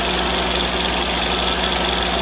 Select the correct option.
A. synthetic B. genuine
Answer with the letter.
B